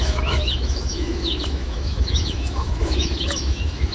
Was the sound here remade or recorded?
remade